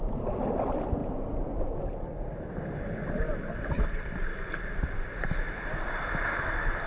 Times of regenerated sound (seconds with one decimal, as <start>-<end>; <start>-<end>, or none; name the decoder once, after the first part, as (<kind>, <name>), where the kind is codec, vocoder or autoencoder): none